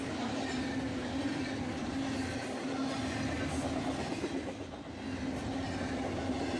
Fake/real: real